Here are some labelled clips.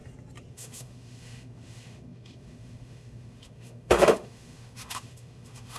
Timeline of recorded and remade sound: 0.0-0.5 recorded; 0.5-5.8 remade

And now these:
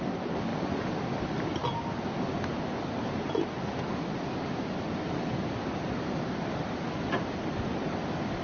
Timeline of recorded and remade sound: 0.0-8.4 recorded

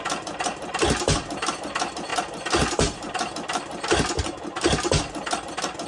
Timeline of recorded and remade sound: 0.0-5.9 recorded

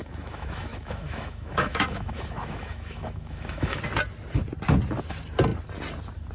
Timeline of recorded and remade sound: 0.0-3.8 remade; 3.8-6.3 recorded

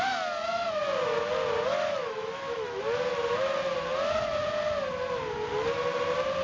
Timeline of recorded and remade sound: 0.0-1.7 recorded; 1.7-2.8 remade; 2.8-6.4 recorded

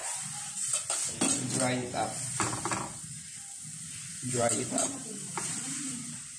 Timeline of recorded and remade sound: 0.0-0.9 remade; 0.9-4.1 recorded; 4.1-6.4 remade

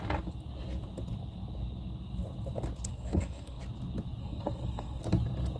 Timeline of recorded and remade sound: 0.0-2.9 recorded; 2.9-3.6 remade; 3.6-4.2 recorded; 4.2-5.0 remade; 5.0-5.6 recorded

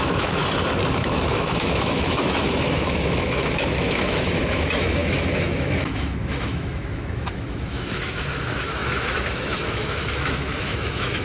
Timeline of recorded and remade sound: 0.0-0.4 remade; 0.4-0.9 recorded; 0.9-11.2 remade